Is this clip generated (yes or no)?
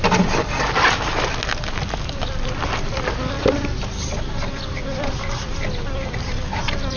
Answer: no